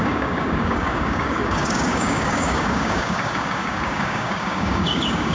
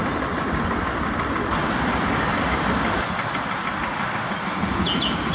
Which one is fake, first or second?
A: first